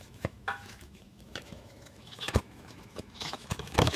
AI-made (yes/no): yes